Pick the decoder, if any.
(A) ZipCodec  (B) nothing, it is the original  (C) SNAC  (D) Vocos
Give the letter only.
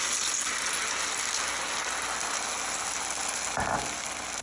B